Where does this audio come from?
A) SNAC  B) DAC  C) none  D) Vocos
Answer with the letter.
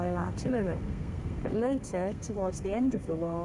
A